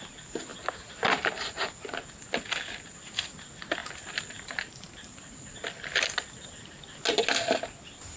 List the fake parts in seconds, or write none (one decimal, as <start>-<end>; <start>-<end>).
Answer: 3.8-5.3